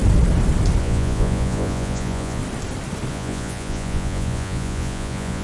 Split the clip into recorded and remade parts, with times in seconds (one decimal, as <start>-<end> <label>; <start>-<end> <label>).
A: 0.0-0.8 recorded; 0.8-2.4 remade; 2.4-3.1 recorded; 3.1-5.4 remade